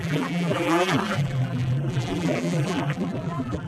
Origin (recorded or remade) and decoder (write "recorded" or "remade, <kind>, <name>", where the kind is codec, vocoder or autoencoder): remade, vocoder, BigVGAN v2